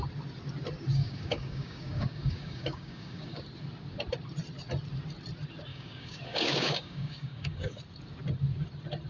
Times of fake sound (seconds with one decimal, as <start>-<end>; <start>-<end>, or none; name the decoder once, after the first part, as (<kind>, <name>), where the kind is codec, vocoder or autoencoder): 0.9-3.4 (codec, DAC); 5.7-7.8